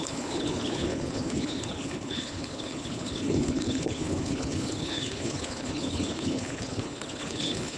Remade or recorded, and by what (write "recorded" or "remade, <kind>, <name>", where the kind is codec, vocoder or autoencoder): remade, codec, HILCodec